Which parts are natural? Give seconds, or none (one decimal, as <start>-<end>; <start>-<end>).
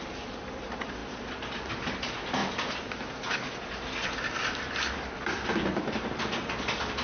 none